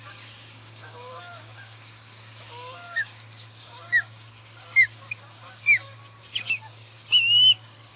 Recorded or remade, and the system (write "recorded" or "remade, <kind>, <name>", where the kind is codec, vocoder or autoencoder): remade, codec, DAC